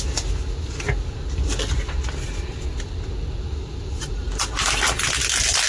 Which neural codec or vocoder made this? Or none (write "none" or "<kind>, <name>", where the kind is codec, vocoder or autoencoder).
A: none